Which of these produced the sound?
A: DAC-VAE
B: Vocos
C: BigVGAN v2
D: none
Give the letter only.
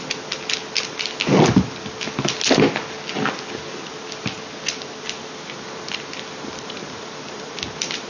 D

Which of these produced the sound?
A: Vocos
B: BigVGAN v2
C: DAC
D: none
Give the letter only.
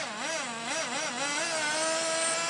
D